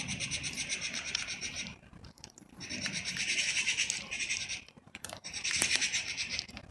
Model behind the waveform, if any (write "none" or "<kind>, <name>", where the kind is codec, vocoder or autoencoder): vocoder, BigVGAN v2